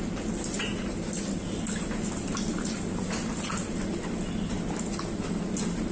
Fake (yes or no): no